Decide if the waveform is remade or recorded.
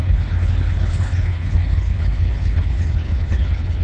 remade